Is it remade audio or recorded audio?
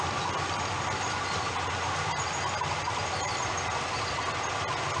recorded